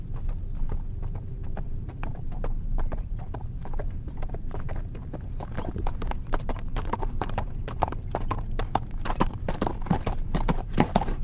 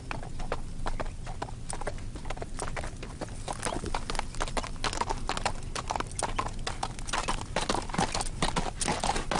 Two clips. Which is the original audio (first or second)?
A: second